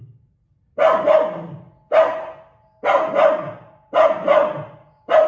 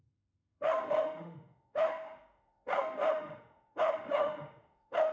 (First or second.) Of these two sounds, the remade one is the second